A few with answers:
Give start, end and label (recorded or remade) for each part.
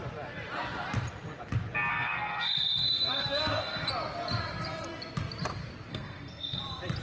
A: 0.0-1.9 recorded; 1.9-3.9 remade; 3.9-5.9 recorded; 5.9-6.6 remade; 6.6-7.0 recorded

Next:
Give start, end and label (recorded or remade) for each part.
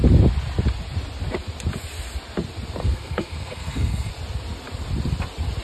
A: 0.0-2.8 recorded; 2.8-4.1 remade; 4.1-5.6 recorded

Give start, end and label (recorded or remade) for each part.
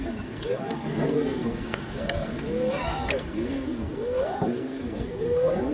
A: 0.0-5.7 remade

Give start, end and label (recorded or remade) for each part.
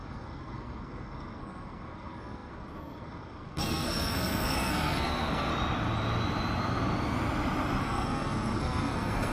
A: 0.0-5.5 remade; 5.5-7.8 recorded; 7.8-9.3 remade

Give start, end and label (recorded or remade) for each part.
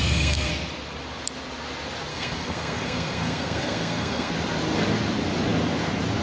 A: 0.0-0.5 remade; 0.5-2.1 recorded; 2.1-4.3 remade; 4.3-6.2 recorded